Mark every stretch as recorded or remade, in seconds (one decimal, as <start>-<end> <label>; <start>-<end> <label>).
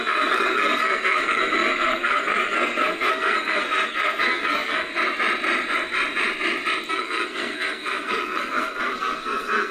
0.0-4.9 remade; 4.9-6.9 recorded; 6.9-9.7 remade